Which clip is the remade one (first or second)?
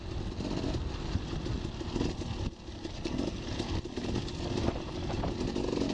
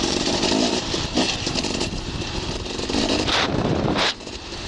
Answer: second